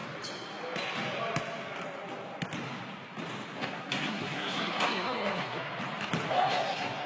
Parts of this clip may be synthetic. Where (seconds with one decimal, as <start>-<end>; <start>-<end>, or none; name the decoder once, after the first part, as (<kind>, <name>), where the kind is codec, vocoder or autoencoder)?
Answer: 3.6-5.7 (codec, SNAC); 6.3-7.1